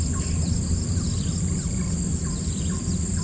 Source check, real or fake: real